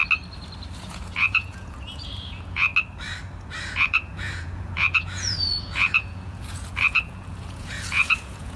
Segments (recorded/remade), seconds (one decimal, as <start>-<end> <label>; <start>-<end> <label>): 0.0-0.8 recorded; 0.8-2.7 remade; 2.7-3.6 recorded; 3.6-8.6 remade

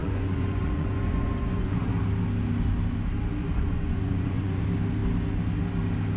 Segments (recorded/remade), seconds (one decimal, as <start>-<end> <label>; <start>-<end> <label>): 0.0-1.8 remade; 1.8-3.4 recorded; 3.4-4.6 remade; 4.6-6.2 recorded

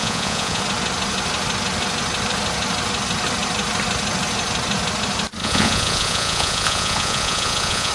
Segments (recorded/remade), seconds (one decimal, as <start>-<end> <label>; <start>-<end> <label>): 0.0-0.6 remade; 0.6-5.4 recorded; 5.4-7.9 remade

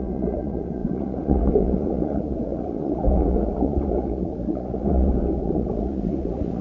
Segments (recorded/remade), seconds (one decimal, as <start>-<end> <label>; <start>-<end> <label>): 0.0-6.6 remade

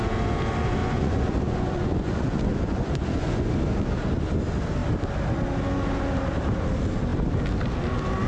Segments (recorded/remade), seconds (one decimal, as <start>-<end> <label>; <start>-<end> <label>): 0.0-0.8 recorded; 0.8-3.5 remade; 3.5-8.3 recorded

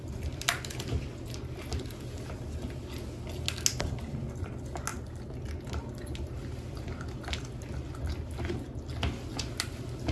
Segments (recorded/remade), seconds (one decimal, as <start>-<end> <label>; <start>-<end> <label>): 0.0-10.1 recorded